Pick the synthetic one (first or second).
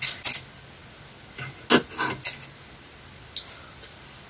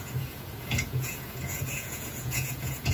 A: second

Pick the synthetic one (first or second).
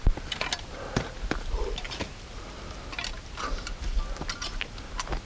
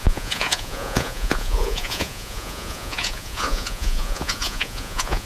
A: second